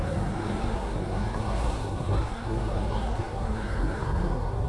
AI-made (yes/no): yes